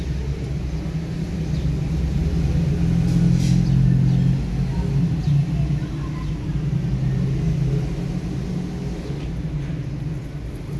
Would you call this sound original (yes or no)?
yes